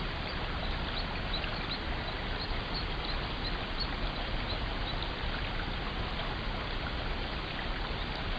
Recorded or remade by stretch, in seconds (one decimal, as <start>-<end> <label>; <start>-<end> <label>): 0.0-8.4 recorded